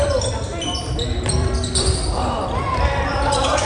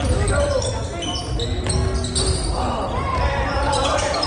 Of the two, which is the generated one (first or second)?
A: first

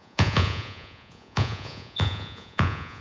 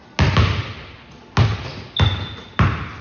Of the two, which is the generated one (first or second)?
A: first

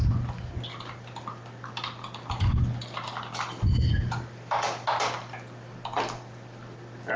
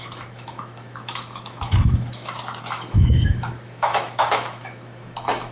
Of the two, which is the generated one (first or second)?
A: second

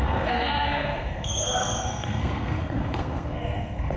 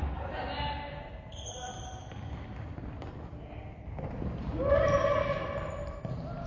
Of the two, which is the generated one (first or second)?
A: first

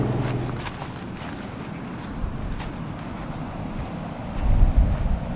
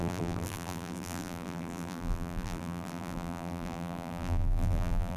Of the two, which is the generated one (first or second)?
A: second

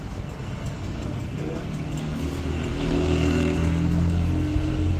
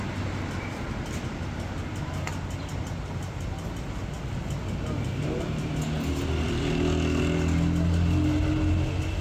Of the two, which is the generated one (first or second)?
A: first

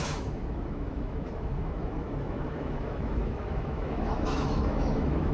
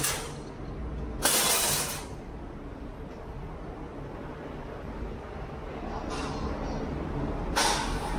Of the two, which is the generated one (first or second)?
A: first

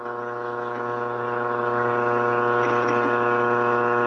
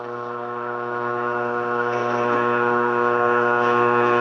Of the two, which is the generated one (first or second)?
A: second